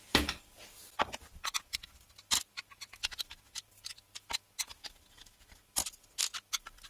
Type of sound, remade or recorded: recorded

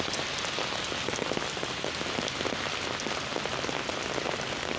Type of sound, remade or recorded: recorded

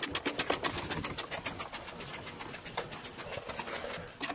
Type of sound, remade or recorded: recorded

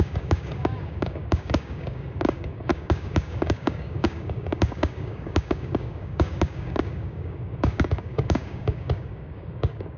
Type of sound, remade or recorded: remade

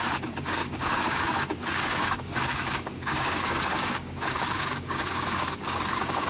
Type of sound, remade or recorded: remade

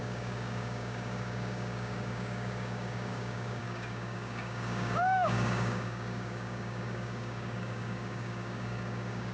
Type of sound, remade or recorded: remade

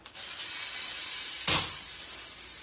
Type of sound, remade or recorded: recorded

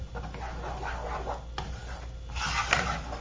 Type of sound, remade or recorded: recorded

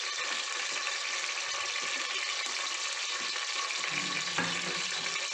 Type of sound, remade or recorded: recorded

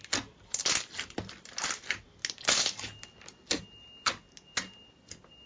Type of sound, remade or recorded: recorded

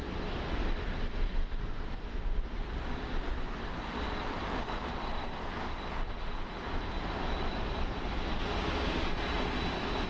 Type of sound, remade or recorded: recorded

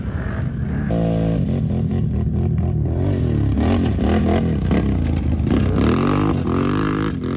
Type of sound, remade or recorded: recorded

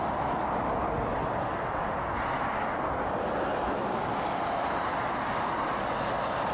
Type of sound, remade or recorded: recorded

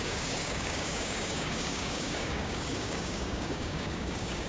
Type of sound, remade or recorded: remade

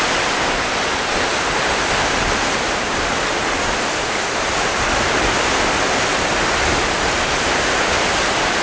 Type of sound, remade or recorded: recorded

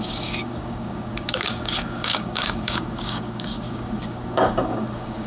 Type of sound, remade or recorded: remade